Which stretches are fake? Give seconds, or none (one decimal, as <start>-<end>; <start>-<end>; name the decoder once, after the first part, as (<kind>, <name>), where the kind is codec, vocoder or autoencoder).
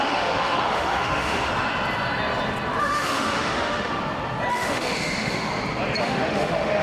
0.0-1.5 (autoencoder, DAC-VAE); 2.8-3.9; 4.5-5.5; 6.0-6.8